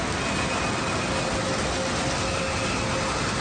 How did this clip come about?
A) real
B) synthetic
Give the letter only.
A